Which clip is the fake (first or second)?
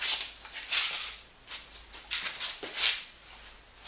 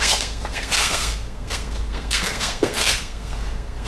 second